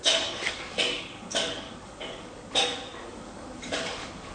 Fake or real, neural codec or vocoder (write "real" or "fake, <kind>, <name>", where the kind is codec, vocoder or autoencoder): fake, codec, DAC